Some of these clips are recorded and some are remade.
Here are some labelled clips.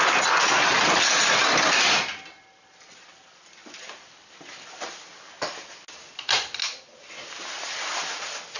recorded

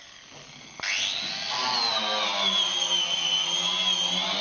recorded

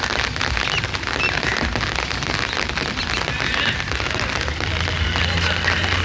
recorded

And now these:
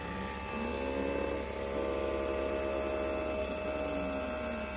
recorded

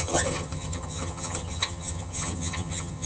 remade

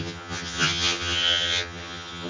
remade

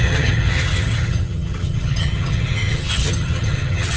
remade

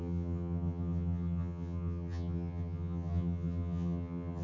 remade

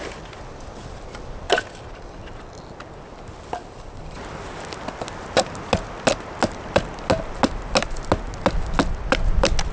recorded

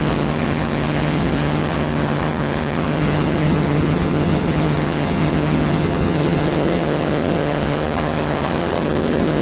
remade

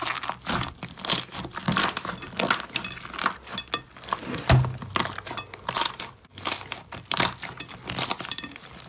recorded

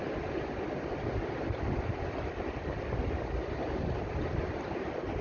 recorded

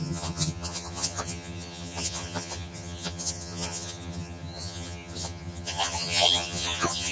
remade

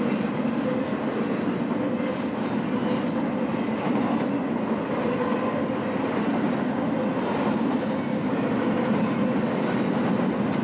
recorded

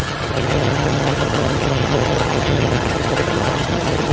remade